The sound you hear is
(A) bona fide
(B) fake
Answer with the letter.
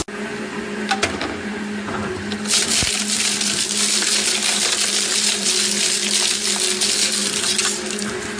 A